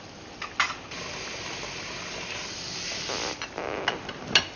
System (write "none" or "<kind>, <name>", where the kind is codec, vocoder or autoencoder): none